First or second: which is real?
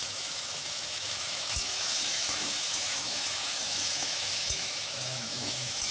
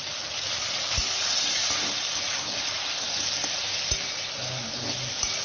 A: second